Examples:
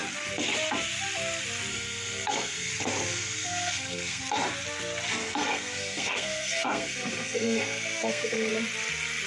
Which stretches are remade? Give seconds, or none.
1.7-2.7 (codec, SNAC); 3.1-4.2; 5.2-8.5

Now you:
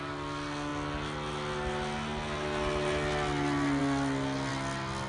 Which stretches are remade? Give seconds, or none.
none

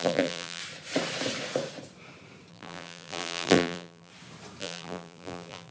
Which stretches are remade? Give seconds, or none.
0.0-0.6 (vocoder, BigVGAN v2); 2.5-4.1; 4.6-5.7

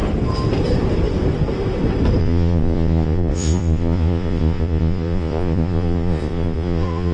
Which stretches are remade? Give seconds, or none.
2.2-7.1 (vocoder, Vocos)

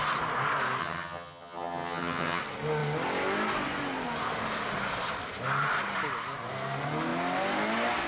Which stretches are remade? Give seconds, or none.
0.8-2.4 (vocoder, HiFi-GAN)

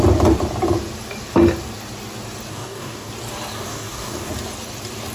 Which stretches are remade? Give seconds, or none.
2.5-3.1 (codec, DAC); 3.7-4.3